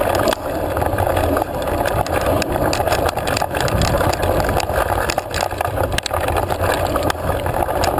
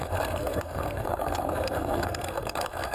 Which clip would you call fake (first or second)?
second